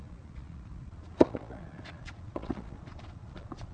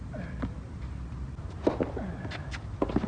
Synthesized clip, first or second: first